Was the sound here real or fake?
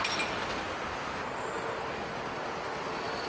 real